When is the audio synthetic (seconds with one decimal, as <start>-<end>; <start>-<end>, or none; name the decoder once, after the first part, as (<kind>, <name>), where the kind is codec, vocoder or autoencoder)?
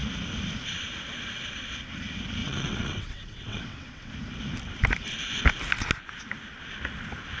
2.4-4.1 (vocoder, WaveNeXt)